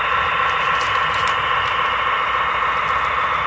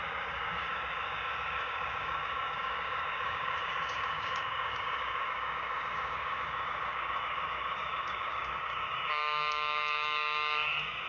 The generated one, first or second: second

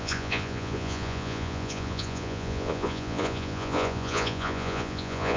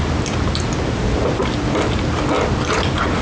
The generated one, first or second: first